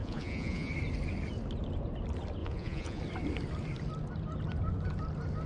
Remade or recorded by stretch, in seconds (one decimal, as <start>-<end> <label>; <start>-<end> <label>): 0.0-0.7 remade; 0.7-2.4 recorded; 2.4-3.0 remade; 3.0-5.5 recorded